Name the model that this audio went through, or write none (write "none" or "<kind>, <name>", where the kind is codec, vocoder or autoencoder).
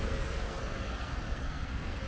codec, SNAC